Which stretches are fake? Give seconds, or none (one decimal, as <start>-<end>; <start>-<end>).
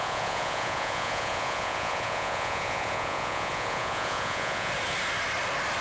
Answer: 0.0-4.7